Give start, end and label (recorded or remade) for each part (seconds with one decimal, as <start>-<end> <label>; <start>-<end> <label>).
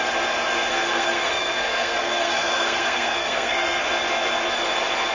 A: 0.0-0.7 recorded; 0.7-3.8 remade; 3.8-5.1 recorded